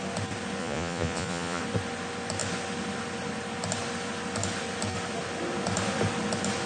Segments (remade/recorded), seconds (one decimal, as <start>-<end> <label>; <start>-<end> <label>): 0.0-0.6 recorded; 0.6-1.6 remade; 1.6-6.7 recorded

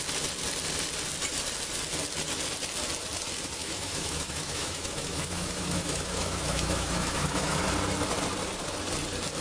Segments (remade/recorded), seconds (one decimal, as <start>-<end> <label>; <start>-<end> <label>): 0.0-3.6 recorded; 3.6-7.6 remade; 7.6-9.4 recorded

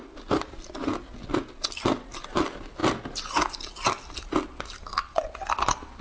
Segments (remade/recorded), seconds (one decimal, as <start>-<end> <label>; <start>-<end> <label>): 0.0-6.0 recorded